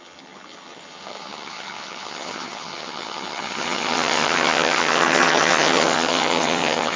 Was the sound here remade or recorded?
remade